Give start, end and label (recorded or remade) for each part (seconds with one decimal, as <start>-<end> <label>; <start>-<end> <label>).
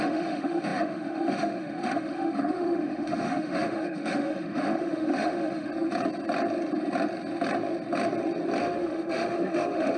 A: 0.0-5.7 remade; 5.7-8.6 recorded; 8.6-10.0 remade